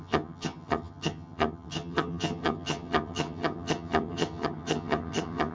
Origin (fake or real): fake